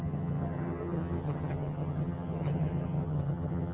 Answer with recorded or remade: remade